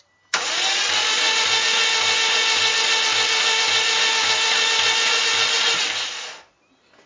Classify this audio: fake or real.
real